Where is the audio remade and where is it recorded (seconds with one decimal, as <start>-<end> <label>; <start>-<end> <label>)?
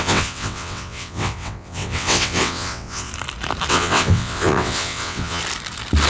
0.0-3.1 remade; 3.1-3.7 recorded; 3.7-5.4 remade; 5.4-6.1 recorded